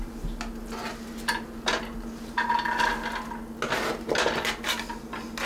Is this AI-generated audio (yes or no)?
no